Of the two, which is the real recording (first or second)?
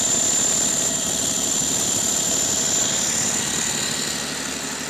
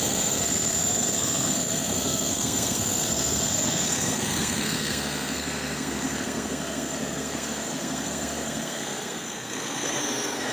first